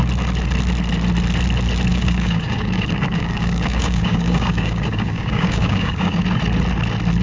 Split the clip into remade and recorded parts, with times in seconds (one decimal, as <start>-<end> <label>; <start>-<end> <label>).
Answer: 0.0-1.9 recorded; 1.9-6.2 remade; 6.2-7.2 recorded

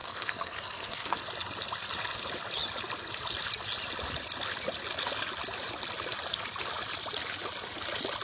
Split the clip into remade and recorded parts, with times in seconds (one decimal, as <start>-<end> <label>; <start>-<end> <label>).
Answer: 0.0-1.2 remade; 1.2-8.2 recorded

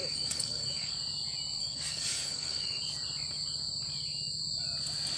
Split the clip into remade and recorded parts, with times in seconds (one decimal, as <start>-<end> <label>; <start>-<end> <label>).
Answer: 0.0-0.9 remade; 0.9-1.6 recorded; 1.6-2.8 remade; 2.8-5.2 recorded

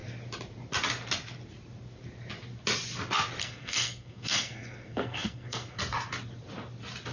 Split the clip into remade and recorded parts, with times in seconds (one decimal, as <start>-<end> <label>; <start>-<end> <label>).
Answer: 0.0-3.4 recorded; 3.4-5.8 remade; 5.8-7.1 recorded

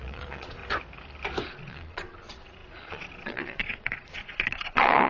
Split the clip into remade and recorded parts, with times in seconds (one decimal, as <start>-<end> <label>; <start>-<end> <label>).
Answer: 0.0-0.6 remade; 0.6-1.5 recorded; 1.5-5.1 remade

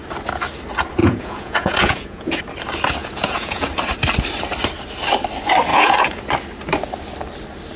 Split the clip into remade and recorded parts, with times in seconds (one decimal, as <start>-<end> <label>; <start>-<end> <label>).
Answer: 0.0-1.0 recorded; 1.0-2.4 remade; 2.4-3.0 recorded; 3.0-3.7 remade; 3.7-5.7 recorded; 5.7-6.2 remade; 6.2-7.8 recorded

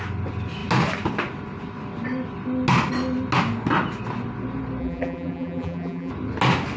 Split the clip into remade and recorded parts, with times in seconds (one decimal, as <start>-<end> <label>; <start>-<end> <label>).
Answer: 0.0-4.8 recorded; 4.8-6.1 remade; 6.1-6.8 recorded